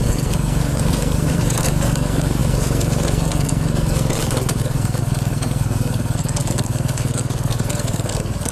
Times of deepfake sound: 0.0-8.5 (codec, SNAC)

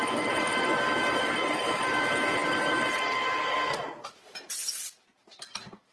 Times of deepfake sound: none